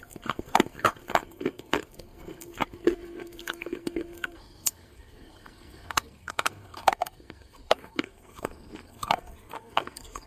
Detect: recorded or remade remade